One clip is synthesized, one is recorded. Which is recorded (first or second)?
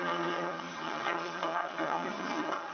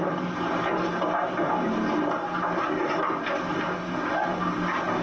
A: second